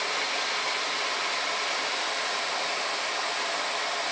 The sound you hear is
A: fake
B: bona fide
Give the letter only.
B